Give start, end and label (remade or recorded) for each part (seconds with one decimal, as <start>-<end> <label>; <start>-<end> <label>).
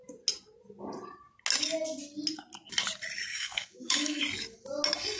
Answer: 0.0-3.3 recorded; 3.3-4.2 remade; 4.2-5.2 recorded